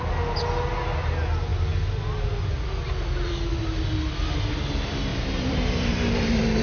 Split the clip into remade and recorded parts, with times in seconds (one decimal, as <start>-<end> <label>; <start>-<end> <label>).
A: 0.0-5.1 recorded; 5.1-6.6 remade